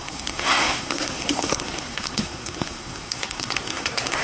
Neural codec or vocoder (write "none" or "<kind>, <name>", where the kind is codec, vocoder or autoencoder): codec, SNAC